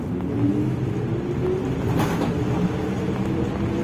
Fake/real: real